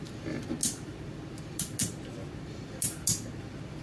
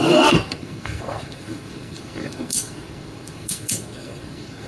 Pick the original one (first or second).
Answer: first